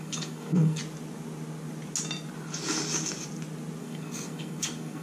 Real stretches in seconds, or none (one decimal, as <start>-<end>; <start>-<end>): 0.8-3.8